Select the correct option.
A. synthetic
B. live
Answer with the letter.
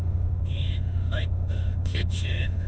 A